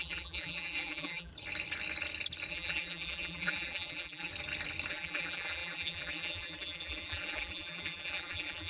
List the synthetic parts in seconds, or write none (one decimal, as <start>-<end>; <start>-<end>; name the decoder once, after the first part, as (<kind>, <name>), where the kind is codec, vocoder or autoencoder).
0.0-1.3 (vocoder, BigVGAN v2); 2.5-4.3; 4.9-8.7